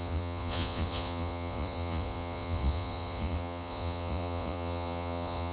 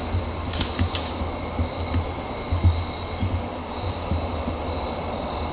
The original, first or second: second